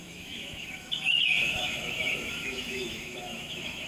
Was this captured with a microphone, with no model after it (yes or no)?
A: no